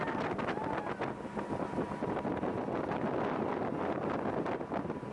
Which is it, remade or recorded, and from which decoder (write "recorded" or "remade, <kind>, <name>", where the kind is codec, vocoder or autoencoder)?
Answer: recorded